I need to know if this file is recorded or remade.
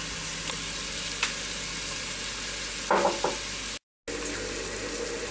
recorded